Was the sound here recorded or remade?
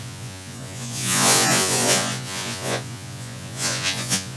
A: remade